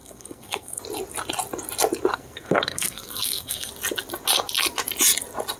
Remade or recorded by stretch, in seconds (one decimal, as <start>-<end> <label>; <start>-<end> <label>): 0.0-0.8 remade; 0.8-2.1 recorded; 2.1-3.7 remade; 3.7-5.6 recorded